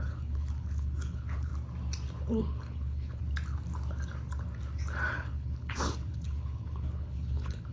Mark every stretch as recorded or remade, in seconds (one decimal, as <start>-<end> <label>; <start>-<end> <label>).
0.0-1.5 remade; 1.5-2.4 recorded; 2.4-3.2 remade; 3.2-5.1 recorded; 5.1-7.7 remade